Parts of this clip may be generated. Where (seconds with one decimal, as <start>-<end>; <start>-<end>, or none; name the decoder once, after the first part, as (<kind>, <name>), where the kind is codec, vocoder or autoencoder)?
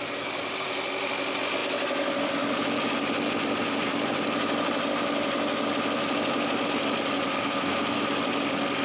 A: 7.4-8.0 (codec, SNAC)